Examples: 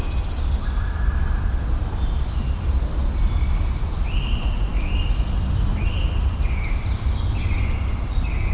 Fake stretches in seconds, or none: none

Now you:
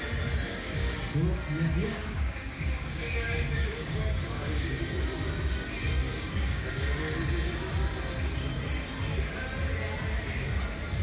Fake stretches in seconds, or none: 0.5-1.0 (codec, DAC); 1.8-4.8; 6.0-6.7

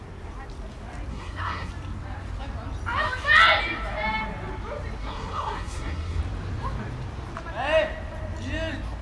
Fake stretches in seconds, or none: 1.1-1.7 (codec, SNAC); 5.0-6.2

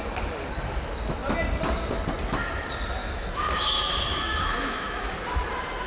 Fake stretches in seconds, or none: 3.0-5.1 (autoencoder, DAC-VAE)

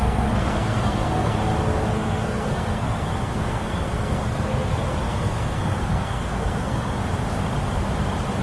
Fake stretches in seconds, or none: 0.0-1.4 (codec, SNAC); 1.9-7.0